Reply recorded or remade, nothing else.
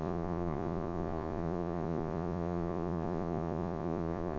remade